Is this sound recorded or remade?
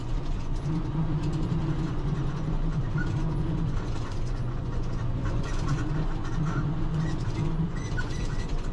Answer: remade